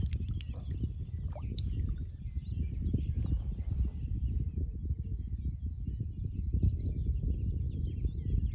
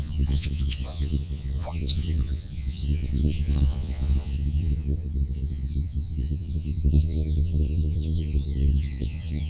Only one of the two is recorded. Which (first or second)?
first